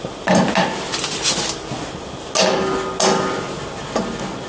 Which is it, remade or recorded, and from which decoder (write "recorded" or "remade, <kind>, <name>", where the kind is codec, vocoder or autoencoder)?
recorded